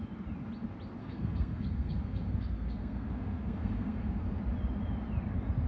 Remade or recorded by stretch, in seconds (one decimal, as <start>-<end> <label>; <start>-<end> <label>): 0.0-1.0 recorded; 1.0-4.4 remade; 4.4-5.7 recorded

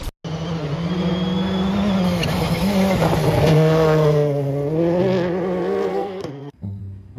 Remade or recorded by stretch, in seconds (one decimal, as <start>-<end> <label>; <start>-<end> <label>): 0.0-3.2 recorded; 3.2-4.5 remade; 4.5-5.9 recorded; 5.9-6.8 remade; 6.8-7.2 recorded

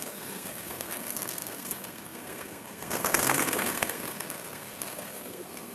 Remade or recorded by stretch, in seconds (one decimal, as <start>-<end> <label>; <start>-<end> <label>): 0.0-5.7 remade